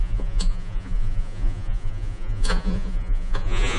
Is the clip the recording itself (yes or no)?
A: no